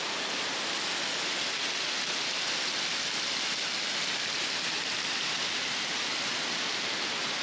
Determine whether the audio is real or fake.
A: real